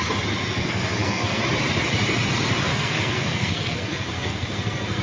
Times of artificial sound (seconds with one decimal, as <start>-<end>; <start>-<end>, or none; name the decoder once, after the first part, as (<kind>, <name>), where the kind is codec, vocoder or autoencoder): 0.6-1.4 (codec, SNAC); 2.7-5.0